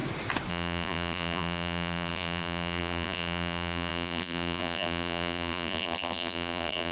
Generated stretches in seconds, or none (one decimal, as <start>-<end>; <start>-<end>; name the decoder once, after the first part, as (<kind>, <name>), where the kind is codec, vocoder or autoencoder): 0.5-6.9 (vocoder, BigVGAN v2)